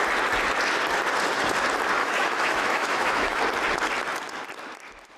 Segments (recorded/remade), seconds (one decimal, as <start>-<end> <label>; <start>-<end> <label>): 0.0-2.0 recorded; 2.0-3.4 remade; 3.4-5.2 recorded